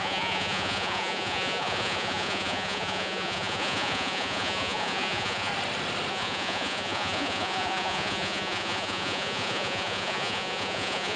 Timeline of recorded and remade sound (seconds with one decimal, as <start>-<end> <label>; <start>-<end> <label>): 0.0-5.5 remade; 5.5-6.1 recorded; 6.1-11.2 remade